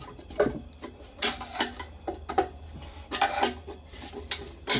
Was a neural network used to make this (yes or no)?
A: no